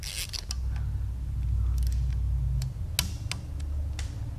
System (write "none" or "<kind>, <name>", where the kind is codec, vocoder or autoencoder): none